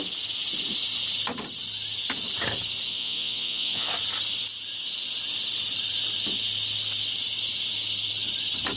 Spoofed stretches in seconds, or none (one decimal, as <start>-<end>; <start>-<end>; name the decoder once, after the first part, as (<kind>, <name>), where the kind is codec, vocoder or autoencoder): 2.9-3.9 (vocoder, Vocos)